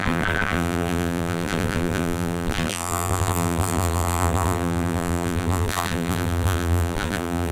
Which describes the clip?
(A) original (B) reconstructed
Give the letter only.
B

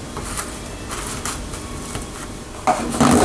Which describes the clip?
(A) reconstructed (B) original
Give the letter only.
B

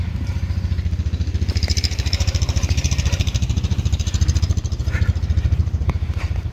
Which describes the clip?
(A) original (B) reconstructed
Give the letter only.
B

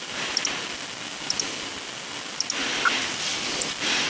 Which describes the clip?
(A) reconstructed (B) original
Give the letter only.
B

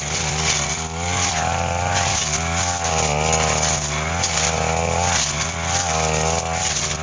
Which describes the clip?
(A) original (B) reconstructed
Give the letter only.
A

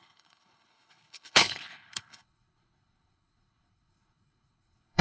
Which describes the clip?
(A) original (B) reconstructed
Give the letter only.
B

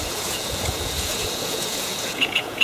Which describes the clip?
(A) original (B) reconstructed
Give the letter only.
B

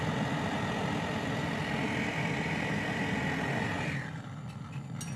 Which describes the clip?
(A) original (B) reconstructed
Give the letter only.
A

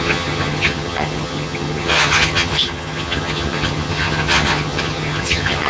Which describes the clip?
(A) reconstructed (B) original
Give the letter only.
A